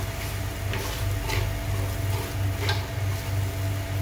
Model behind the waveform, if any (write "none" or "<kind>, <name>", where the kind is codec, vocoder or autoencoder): none